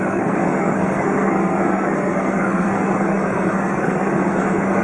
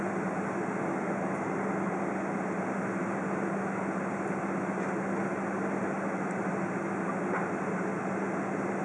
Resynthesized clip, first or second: first